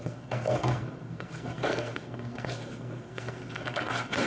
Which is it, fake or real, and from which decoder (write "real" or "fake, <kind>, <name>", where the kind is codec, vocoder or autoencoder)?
fake, codec, SNAC